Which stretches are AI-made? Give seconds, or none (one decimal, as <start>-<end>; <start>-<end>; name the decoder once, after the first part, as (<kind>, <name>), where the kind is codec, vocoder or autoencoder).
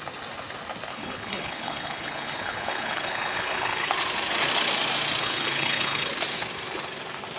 0.9-3.9 (codec, HILCodec); 5.2-6.1